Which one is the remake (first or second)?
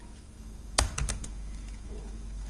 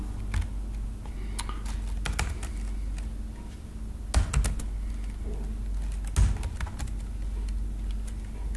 first